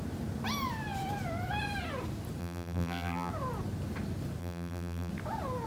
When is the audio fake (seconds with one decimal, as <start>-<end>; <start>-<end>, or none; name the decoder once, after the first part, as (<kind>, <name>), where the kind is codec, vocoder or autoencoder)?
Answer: 2.4-3.3 (vocoder, BigVGAN v2); 4.4-5.1